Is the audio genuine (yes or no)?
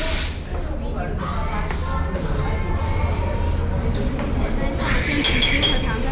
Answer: yes